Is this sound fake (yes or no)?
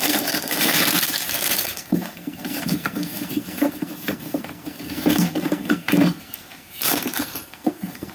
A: yes